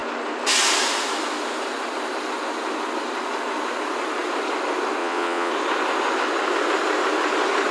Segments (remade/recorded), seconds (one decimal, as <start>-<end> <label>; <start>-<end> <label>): 0.0-5.0 recorded; 5.0-5.5 remade; 5.5-7.7 recorded